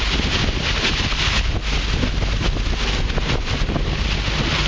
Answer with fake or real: real